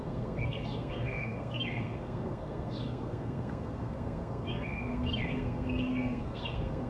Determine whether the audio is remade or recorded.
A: remade